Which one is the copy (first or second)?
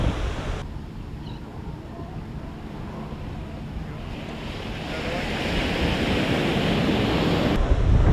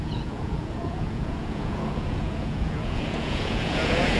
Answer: second